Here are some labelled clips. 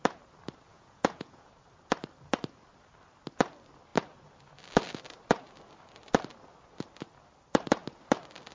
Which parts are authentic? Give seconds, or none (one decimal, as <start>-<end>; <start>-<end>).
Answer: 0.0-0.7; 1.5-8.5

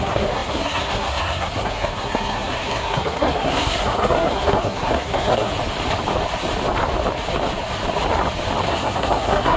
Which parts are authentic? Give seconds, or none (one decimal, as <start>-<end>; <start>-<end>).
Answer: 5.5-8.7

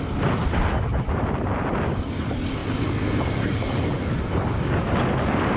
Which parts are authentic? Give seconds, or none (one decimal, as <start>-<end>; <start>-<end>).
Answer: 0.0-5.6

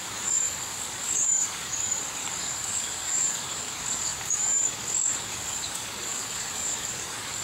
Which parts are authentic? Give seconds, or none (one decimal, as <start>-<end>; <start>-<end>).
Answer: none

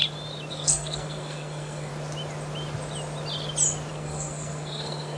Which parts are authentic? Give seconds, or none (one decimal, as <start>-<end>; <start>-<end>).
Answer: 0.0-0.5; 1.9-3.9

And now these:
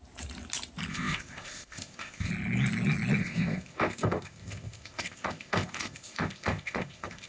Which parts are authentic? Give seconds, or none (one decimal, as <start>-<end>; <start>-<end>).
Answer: 0.0-0.9; 2.3-3.2